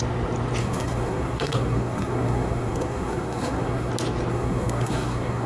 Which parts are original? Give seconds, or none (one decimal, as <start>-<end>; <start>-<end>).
0.0-0.6; 3.9-4.3